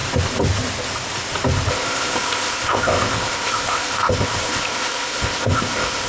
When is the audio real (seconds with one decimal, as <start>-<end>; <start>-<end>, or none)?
0.0-1.7